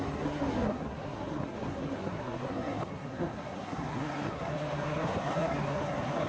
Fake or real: fake